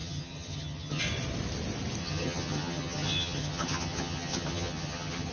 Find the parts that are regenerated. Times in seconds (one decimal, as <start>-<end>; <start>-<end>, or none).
0.0-1.0; 2.0-5.3

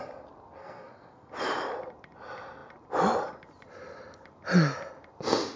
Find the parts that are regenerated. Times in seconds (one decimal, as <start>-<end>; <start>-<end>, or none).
0.6-1.3

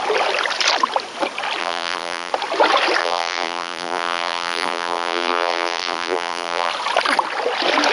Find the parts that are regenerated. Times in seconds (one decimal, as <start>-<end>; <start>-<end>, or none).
1.6-2.3; 3.0-6.7

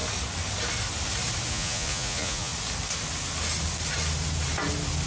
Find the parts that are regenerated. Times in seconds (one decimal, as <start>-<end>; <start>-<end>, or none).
1.5-2.5

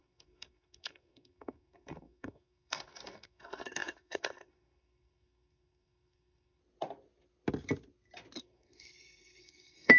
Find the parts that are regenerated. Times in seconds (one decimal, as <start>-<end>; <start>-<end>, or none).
0.0-6.6; 8.4-10.0

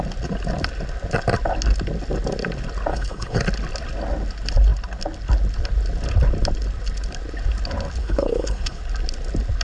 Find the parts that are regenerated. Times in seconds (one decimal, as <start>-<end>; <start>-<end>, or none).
2.9-3.4; 8.0-8.8

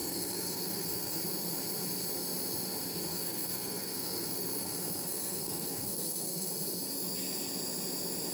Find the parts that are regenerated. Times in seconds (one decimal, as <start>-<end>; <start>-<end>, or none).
0.0-1.2; 3.1-6.5

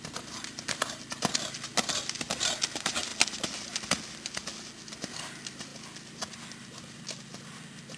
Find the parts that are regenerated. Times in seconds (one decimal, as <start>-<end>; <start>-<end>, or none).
none